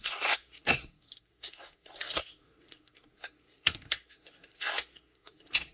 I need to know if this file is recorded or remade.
remade